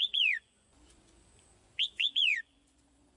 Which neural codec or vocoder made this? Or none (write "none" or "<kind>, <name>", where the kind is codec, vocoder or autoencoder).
vocoder, Vocos